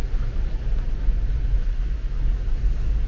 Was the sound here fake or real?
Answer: real